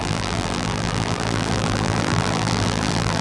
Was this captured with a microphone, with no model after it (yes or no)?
no